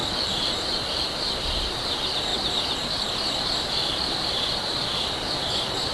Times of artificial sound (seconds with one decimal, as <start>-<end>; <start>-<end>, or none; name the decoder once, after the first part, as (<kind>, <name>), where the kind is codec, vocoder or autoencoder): 0.0-1.3 (vocoder, BigVGAN v2); 2.3-4.2